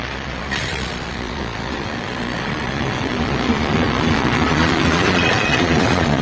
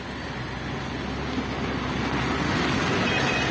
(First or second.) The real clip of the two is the second